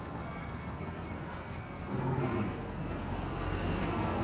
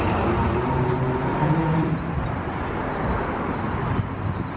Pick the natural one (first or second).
second